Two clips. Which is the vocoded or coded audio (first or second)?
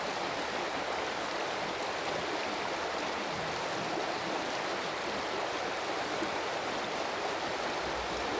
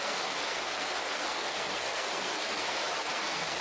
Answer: second